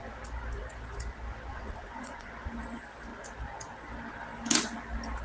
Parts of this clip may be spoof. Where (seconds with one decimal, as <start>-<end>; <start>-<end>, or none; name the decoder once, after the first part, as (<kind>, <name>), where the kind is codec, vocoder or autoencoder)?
1.5-2.3 (vocoder, WaveNeXt)